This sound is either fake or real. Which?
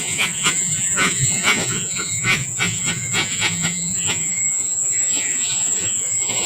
fake